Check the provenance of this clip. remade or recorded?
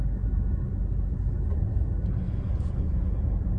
recorded